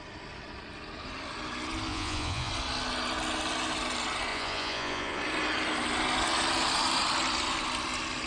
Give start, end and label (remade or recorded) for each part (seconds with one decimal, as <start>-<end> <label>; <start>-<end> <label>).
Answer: 0.0-1.9 recorded; 1.9-2.5 remade; 2.5-4.3 recorded; 4.3-5.2 remade; 5.2-8.3 recorded